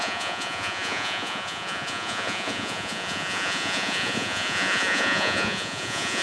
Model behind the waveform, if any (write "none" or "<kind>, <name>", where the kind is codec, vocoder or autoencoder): vocoder, Vocos